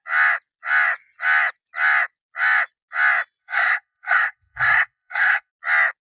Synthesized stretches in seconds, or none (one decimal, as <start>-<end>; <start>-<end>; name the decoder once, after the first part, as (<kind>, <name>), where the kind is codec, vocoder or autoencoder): 3.4-5.5 (codec, SNAC)